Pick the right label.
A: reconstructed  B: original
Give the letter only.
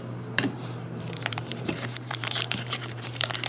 A